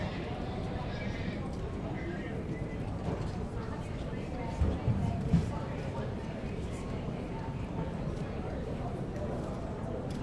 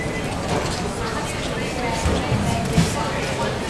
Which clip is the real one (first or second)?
second